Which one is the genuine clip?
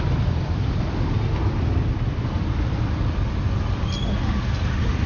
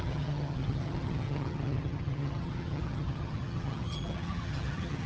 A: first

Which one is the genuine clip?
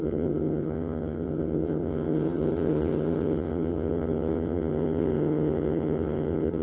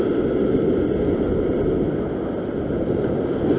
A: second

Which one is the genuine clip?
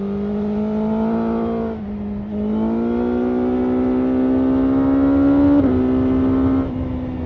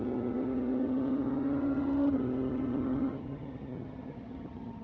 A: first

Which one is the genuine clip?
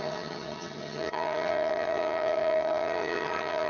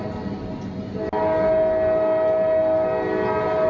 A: second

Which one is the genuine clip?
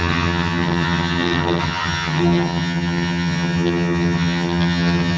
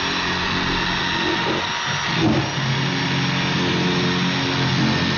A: second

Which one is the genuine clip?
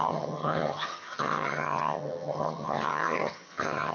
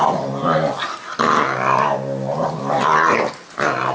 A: second